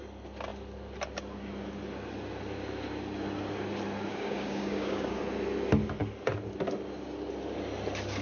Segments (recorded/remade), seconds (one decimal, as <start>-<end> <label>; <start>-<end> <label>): 0.0-4.1 recorded; 4.1-5.2 remade; 5.2-8.2 recorded